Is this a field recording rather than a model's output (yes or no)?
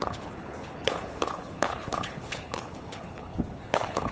no